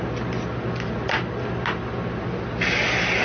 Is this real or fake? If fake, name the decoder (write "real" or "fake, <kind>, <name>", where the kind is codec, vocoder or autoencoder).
real